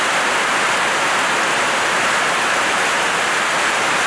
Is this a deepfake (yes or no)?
yes